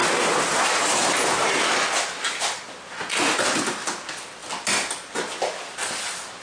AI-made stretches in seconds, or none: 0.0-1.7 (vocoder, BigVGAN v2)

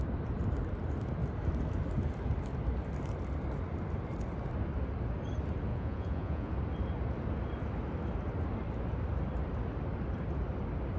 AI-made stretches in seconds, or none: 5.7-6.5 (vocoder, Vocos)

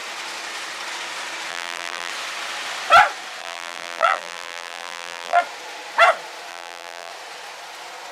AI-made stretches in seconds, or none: 1.5-2.1 (vocoder, BigVGAN v2); 3.4-5.4; 6.5-7.1

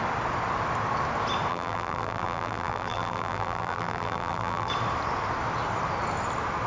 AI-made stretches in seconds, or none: 1.5-4.7 (vocoder, BigVGAN v2)

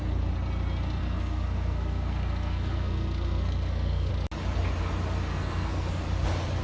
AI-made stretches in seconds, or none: 1.0-4.1 (codec, SNAC); 5.3-5.9